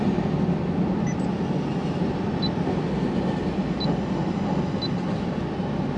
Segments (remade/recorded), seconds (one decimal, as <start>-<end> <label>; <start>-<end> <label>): 0.0-6.0 recorded